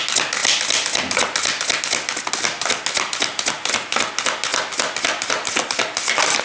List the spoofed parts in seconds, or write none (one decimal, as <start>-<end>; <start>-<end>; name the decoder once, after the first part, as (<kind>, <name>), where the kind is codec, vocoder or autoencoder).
none